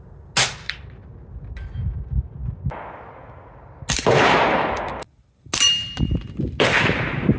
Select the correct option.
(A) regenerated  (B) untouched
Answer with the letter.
B